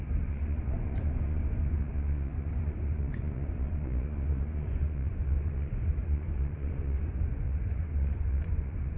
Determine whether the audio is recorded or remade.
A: remade